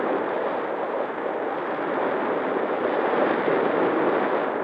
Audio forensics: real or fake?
real